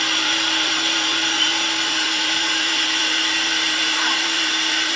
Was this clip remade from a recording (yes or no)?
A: yes